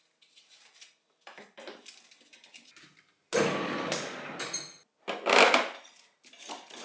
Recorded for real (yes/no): yes